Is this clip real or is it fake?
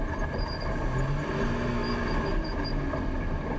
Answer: real